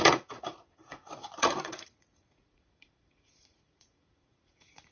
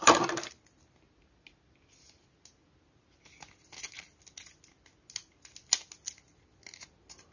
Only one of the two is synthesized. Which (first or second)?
first